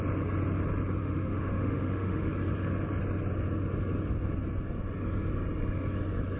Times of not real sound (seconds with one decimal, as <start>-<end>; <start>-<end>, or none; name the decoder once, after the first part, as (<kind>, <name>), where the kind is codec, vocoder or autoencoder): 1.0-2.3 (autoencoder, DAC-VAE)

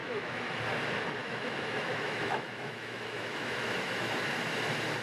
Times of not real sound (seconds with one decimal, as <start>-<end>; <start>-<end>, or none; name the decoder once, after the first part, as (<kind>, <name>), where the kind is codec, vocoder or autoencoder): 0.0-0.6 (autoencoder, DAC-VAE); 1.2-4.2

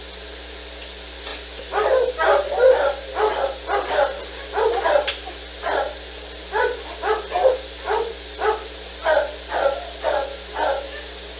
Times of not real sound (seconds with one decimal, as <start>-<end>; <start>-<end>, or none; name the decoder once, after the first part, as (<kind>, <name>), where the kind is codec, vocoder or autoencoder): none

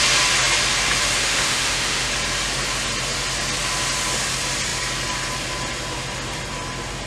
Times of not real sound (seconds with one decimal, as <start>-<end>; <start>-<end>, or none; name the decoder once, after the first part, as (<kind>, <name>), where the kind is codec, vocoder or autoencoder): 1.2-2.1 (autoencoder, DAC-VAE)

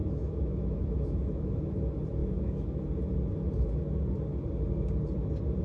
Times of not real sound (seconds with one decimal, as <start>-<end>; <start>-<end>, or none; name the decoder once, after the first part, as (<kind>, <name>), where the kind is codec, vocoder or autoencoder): 0.0-1.6 (autoencoder, DAC-VAE); 2.2-2.9

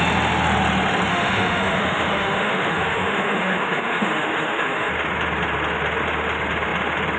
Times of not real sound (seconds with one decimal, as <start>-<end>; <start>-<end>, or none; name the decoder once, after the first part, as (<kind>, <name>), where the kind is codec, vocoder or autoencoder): 1.1-4.9 (autoencoder, DAC-VAE)

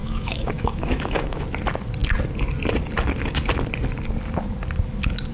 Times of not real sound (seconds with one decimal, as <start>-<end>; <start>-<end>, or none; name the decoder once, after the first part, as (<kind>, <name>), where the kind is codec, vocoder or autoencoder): 0.0-1.4 (autoencoder, DAC-VAE)